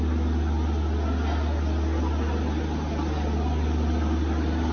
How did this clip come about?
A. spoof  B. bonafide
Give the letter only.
B